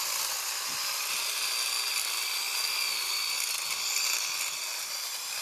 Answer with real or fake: real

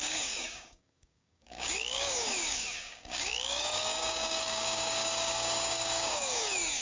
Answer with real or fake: fake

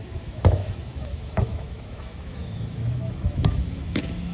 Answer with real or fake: fake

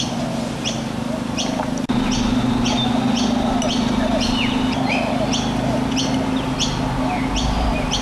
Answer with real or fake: real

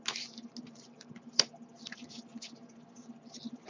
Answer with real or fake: real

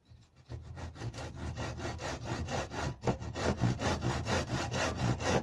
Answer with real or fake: real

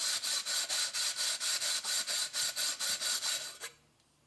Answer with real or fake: real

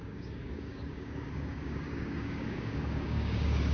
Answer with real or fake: fake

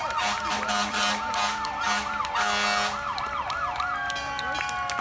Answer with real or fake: real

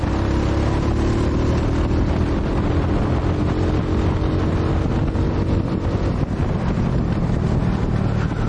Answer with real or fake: real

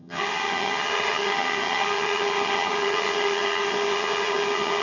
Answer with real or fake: fake